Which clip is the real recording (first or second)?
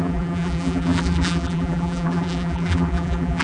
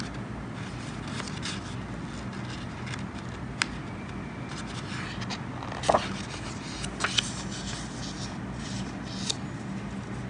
second